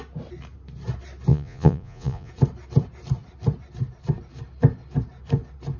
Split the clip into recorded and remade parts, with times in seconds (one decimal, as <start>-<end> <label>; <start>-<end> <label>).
0.0-1.3 recorded; 1.3-2.3 remade; 2.3-5.8 recorded